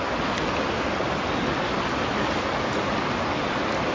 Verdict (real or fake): real